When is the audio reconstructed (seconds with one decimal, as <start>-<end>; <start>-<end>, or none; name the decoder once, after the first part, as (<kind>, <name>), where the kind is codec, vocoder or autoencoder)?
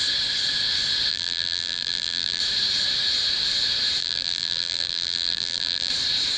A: 1.1-2.4 (vocoder, BigVGAN v2); 4.0-5.9